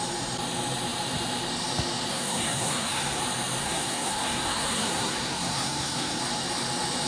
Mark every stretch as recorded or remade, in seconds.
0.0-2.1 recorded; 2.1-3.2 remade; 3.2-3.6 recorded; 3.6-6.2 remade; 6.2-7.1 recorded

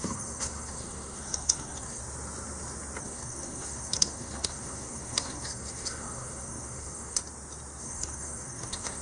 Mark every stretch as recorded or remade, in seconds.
0.0-2.0 remade; 2.0-3.0 recorded; 3.0-7.2 remade; 7.2-7.8 recorded; 7.8-9.0 remade